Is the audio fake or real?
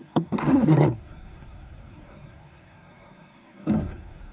fake